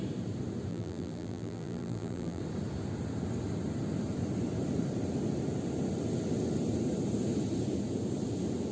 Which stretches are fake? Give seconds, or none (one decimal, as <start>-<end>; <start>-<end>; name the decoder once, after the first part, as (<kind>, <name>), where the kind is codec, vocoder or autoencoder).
0.7-2.4 (vocoder, BigVGAN v2)